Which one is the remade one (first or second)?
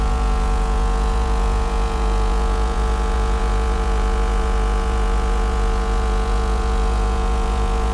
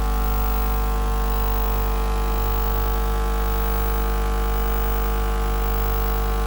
first